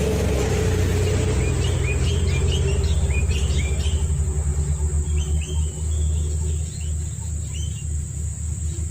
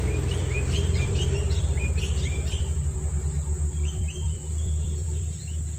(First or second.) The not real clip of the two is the second